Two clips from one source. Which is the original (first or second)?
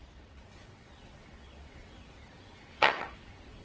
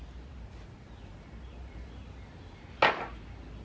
second